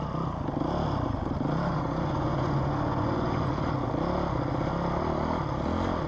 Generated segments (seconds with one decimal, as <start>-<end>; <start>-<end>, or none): 1.7-3.5